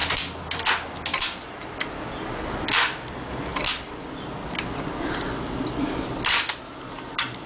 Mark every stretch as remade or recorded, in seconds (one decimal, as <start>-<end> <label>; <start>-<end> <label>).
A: 0.0-7.5 recorded